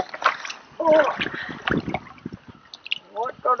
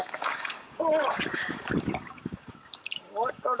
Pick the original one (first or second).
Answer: first